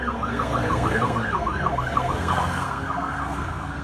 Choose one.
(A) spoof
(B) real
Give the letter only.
A